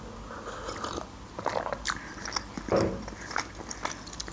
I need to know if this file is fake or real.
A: real